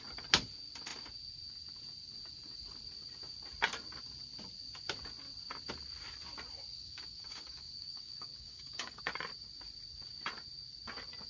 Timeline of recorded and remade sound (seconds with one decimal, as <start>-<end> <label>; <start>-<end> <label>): 0.0-6.7 recorded; 6.7-9.0 remade; 9.0-11.3 recorded